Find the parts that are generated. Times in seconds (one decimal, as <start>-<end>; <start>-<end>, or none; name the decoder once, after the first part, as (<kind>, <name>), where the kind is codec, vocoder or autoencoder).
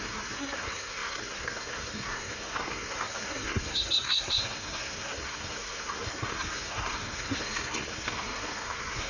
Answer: 0.0-9.1 (codec, SNAC)